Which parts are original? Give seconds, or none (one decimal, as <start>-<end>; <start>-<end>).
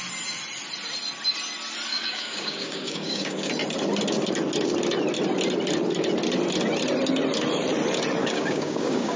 0.0-1.9; 3.5-8.2